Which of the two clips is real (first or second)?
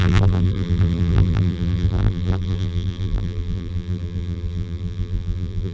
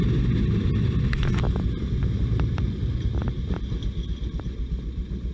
second